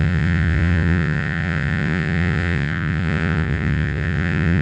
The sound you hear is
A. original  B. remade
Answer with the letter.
B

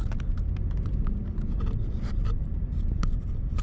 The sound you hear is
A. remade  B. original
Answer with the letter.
A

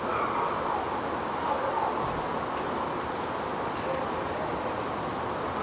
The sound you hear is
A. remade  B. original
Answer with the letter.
B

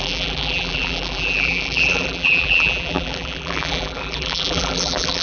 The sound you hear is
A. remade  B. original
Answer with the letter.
A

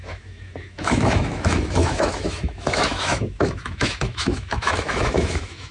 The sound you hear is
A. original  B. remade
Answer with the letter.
B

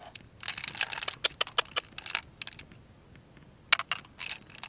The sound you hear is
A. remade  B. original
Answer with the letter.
B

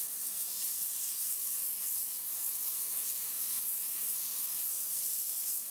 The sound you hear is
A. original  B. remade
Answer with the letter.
B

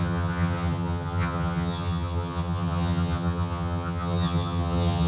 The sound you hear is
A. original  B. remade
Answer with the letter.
B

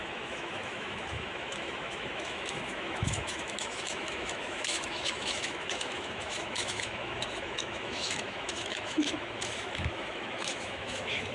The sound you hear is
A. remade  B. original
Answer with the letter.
A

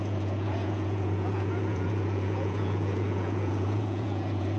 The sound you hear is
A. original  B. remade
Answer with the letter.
B